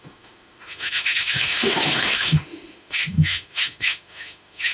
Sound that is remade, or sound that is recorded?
remade